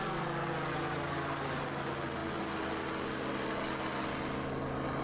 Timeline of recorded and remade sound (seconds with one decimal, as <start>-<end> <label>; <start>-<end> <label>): 0.0-5.0 recorded